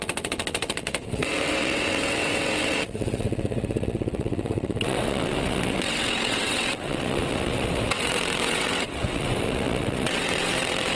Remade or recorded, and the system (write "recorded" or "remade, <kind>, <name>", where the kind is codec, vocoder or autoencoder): remade, vocoder, WaveNeXt